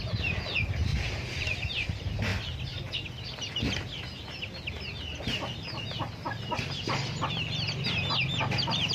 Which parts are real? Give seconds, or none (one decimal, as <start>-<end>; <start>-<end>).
2.3-7.3